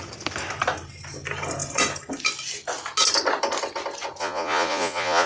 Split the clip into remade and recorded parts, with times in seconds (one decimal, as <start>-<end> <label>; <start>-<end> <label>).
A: 0.0-4.2 recorded; 4.2-5.3 remade